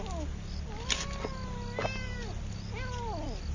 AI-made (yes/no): no